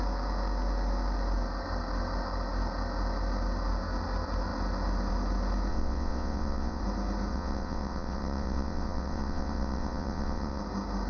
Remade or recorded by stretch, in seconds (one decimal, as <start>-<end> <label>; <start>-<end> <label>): 0.0-5.7 recorded; 5.7-6.8 remade; 6.8-7.3 recorded; 7.3-10.6 remade; 10.6-11.1 recorded